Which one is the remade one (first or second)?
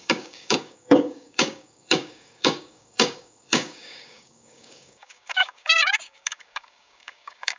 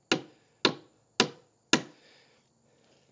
first